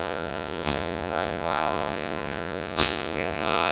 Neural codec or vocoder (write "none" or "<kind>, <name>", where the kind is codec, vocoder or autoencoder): vocoder, Vocos